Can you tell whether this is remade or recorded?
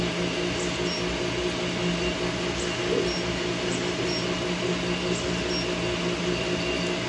recorded